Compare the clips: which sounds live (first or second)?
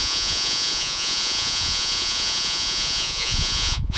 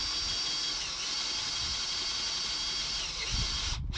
second